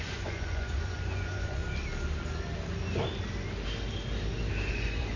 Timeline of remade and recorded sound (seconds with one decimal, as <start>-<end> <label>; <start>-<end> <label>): 0.0-1.6 remade; 1.6-4.7 recorded; 4.7-5.2 remade